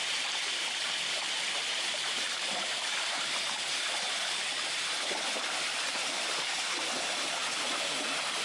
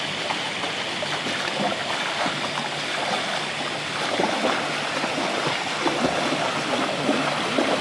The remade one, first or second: first